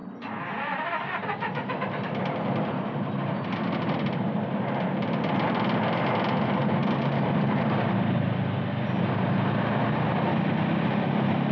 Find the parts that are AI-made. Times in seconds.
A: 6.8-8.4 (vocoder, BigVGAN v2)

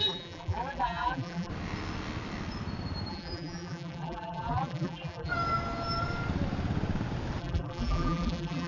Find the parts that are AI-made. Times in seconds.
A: 0.0-1.5 (vocoder, BigVGAN v2); 3.1-5.3; 7.4-8.7

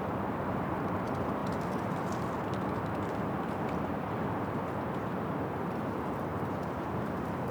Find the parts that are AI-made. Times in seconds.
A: 0.0-1.4 (vocoder, BigVGAN v2); 5.8-7.5

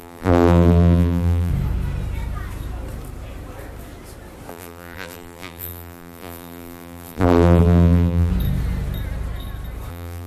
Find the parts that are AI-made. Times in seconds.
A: 0.0-1.5 (vocoder, BigVGAN v2); 4.5-8.3; 9.9-10.3

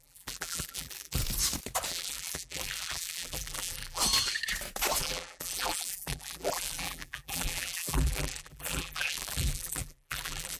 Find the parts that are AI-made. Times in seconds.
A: 0.0-1.2 (vocoder, BigVGAN v2); 1.9-4.0; 5.0-10.6